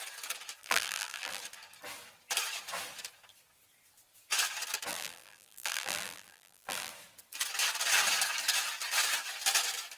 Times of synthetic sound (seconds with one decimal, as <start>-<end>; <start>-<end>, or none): 0.6-1.4; 4.9-6.9

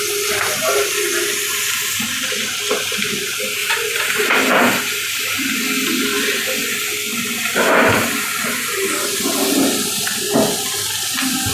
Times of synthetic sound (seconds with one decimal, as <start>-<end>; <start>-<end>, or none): none

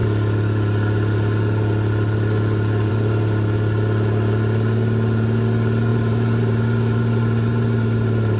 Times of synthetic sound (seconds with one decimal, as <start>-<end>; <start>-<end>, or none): 5.9-8.4

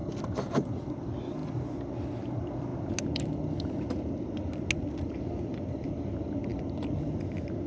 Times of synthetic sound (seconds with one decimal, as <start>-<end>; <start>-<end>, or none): 0.0-0.9; 6.5-7.2

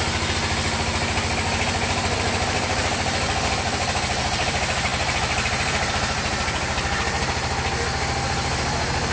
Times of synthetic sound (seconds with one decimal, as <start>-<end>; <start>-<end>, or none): none

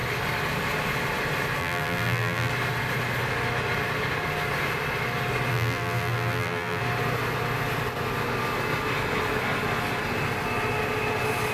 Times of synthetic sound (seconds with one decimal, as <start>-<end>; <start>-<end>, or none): 1.6-2.5; 5.5-6.8

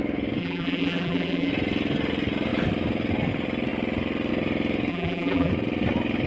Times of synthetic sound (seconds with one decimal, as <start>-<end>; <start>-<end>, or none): 0.4-1.5; 4.9-5.5

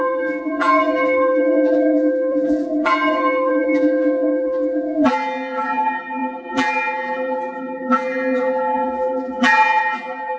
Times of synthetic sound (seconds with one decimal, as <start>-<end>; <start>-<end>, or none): 0.0-10.4